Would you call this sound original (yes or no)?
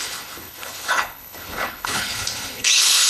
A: no